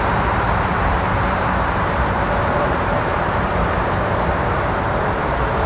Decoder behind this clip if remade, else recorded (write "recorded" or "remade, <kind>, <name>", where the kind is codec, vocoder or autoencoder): remade, vocoder, BigVGAN v2